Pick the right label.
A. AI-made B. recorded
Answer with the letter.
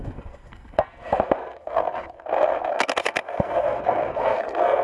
A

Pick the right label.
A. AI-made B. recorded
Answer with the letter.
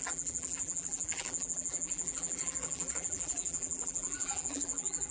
A